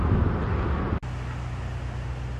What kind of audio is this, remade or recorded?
recorded